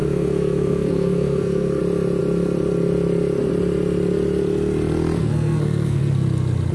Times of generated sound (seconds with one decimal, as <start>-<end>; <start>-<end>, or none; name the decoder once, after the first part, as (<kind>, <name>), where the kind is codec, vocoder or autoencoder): 0.0-1.8 (codec, SNAC); 5.2-6.0